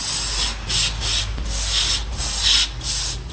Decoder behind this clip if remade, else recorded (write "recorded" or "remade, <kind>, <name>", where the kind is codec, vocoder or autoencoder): recorded